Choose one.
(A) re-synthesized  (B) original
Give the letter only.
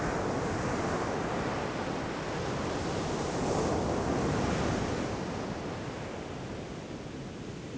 B